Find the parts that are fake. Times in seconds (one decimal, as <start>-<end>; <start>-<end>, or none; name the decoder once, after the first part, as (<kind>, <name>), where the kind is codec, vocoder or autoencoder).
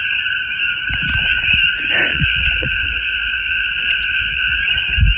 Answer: 2.1-4.6 (vocoder, WaveNeXt)